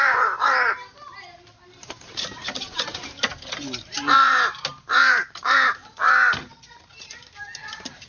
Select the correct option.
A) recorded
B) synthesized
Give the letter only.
B